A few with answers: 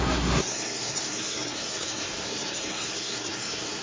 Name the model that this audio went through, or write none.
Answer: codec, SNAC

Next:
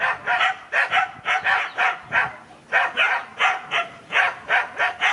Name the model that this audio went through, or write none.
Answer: none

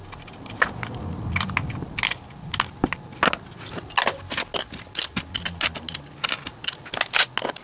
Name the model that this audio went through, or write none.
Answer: none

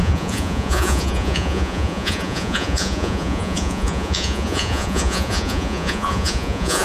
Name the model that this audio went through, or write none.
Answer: vocoder, Vocos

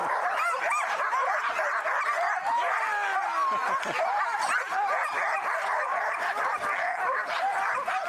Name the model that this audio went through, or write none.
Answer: none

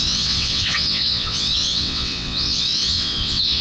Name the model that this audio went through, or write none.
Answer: vocoder, WaveNeXt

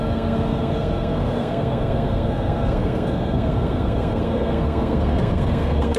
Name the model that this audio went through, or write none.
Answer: codec, SNAC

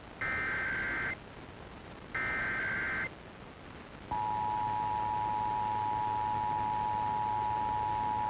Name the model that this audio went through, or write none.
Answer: none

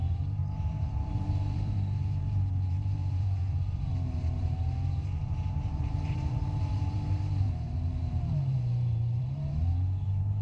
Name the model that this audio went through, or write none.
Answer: vocoder, BigVGAN v2